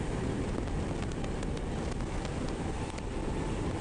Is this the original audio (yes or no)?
yes